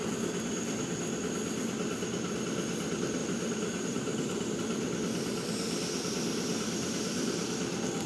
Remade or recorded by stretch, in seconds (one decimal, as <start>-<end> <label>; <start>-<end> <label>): 0.0-3.2 recorded; 3.2-4.5 remade; 4.5-8.1 recorded